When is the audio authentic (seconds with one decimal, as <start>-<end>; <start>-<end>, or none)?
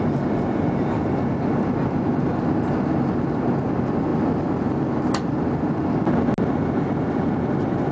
0.0-7.9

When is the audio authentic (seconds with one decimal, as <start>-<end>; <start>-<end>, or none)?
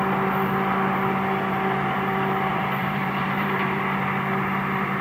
0.0-2.5; 3.8-5.0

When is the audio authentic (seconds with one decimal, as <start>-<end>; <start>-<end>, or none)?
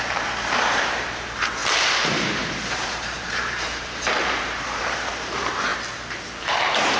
5.7-6.4